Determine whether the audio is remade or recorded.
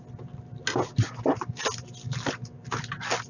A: recorded